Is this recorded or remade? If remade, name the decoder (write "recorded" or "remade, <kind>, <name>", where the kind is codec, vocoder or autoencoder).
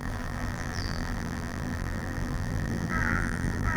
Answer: remade, vocoder, BigVGAN v2